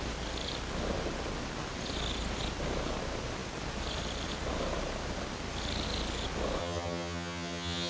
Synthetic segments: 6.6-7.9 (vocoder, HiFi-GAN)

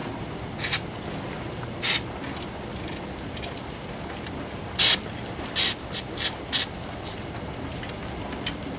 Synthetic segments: none

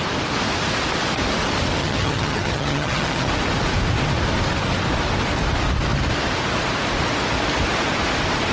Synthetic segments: 1.8-3.3 (vocoder, HiFi-GAN)

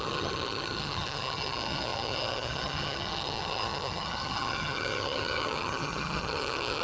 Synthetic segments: 0.0-6.8 (vocoder, HiFi-GAN)

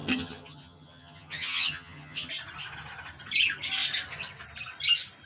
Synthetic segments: 0.0-2.3 (vocoder, HiFi-GAN)

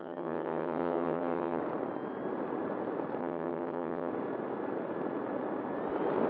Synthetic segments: 0.0-1.6 (vocoder, HiFi-GAN); 3.2-4.1

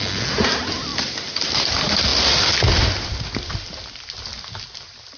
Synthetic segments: none

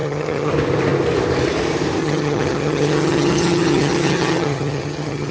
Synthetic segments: 0.0-0.5 (vocoder, HiFi-GAN); 2.0-5.3